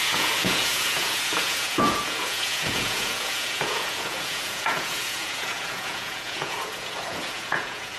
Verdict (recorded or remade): remade